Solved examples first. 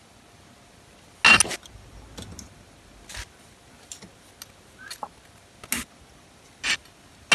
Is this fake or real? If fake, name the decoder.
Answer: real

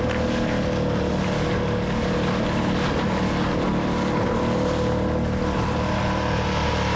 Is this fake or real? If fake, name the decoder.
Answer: real